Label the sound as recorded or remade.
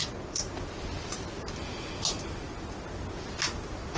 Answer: recorded